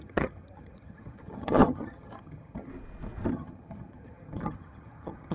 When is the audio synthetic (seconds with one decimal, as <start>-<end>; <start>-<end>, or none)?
0.0-2.7; 3.3-5.3